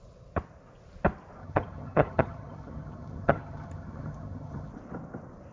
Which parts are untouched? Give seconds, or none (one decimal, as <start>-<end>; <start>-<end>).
0.0-1.4; 4.7-5.5